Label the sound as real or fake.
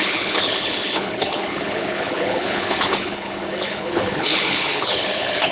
fake